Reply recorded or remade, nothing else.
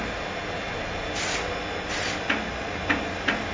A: recorded